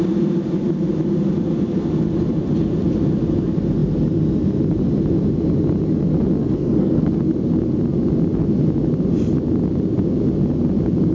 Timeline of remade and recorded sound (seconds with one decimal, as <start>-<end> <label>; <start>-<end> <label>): 0.0-6.4 recorded; 6.4-7.2 remade; 7.2-11.1 recorded